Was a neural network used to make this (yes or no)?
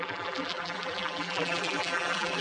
yes